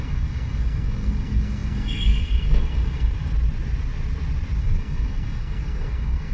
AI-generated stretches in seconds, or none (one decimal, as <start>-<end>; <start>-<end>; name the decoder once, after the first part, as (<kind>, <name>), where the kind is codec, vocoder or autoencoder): 0.0-3.1 (codec, SNAC); 4.6-6.3